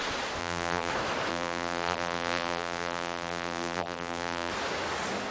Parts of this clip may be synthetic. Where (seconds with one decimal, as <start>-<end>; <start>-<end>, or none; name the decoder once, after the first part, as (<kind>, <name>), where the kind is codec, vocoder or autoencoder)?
0.4-0.9 (vocoder, BigVGAN v2); 1.3-4.5